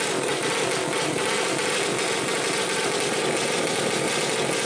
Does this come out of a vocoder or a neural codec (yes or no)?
no